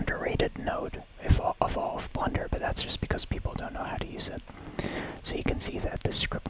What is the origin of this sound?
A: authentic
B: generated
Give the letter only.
A